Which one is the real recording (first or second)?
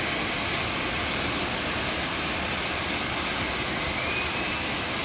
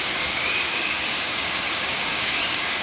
first